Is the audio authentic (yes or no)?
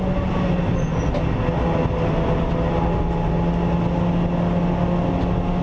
yes